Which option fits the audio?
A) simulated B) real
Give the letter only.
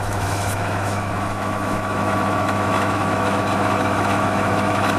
A